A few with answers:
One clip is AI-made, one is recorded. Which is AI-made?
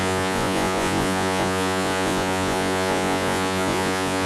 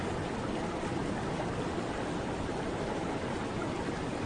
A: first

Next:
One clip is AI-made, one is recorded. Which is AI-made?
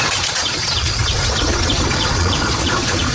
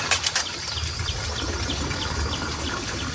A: first